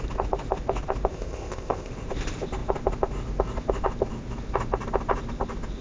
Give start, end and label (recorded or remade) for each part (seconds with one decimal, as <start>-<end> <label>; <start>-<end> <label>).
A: 0.0-1.1 recorded; 1.1-1.9 remade; 1.9-5.8 recorded